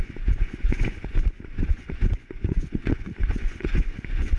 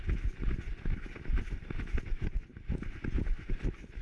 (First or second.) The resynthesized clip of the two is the first